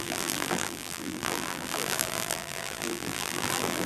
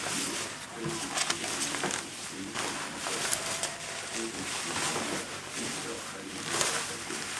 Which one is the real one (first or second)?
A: second